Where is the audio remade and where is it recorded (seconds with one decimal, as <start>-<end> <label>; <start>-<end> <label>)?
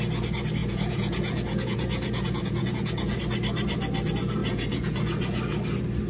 0.0-0.6 recorded; 0.6-3.2 remade; 3.2-4.4 recorded; 4.4-5.6 remade; 5.6-6.1 recorded